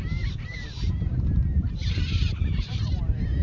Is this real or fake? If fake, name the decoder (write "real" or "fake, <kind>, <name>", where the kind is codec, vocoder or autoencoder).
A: fake, vocoder, BigVGAN v2